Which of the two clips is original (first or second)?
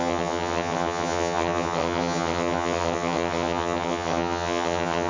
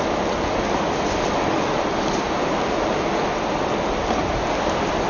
second